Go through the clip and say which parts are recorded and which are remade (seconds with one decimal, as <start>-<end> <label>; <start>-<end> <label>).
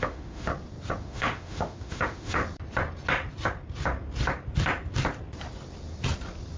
0.0-0.5 remade; 0.5-1.0 recorded; 1.0-2.4 remade; 2.4-6.6 recorded